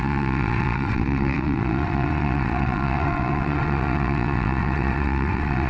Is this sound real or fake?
fake